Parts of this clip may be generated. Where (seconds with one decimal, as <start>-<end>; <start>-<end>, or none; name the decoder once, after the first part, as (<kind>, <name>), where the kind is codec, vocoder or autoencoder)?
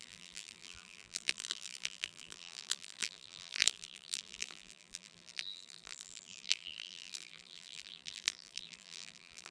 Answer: 0.0-9.5 (vocoder, BigVGAN v2)